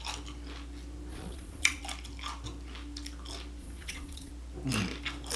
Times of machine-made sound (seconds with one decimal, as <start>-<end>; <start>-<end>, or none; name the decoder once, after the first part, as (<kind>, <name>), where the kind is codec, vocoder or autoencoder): 1.1-1.8 (vocoder, Vocos); 3.6-4.3